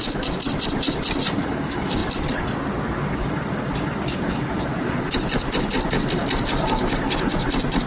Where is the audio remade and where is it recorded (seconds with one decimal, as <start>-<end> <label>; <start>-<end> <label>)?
0.0-7.9 recorded

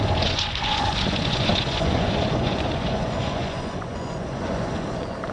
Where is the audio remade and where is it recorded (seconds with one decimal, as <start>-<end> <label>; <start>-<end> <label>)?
0.0-5.3 remade

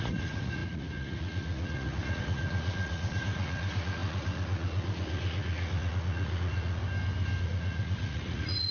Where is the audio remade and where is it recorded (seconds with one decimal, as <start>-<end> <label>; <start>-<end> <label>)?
0.0-6.8 remade; 6.8-7.4 recorded; 7.4-8.7 remade